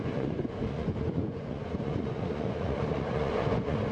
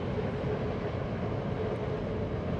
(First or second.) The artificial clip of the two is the first